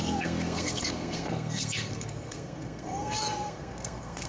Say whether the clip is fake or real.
fake